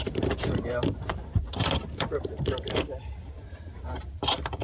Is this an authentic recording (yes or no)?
no